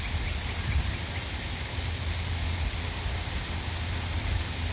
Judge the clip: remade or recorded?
recorded